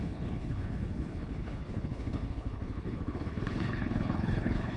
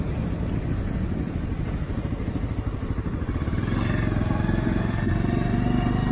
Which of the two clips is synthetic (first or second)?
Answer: first